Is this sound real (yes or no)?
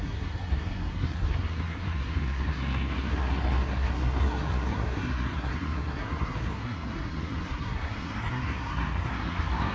no